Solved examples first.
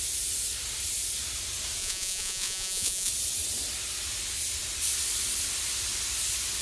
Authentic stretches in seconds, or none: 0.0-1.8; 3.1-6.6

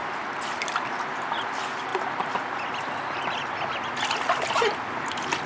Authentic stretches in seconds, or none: 0.0-5.5

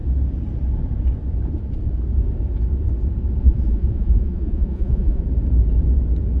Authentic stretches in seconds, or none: 0.0-3.4; 5.2-6.4

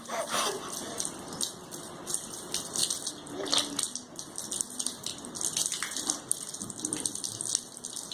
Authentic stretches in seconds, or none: 0.0-8.1

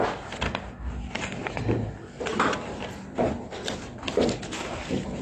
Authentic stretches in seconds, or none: 0.0-2.3; 3.8-5.2

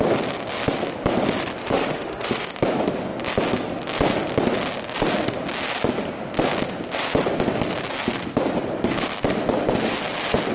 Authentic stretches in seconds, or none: 0.0-1.6; 2.5-10.5